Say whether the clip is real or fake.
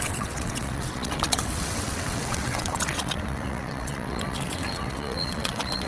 fake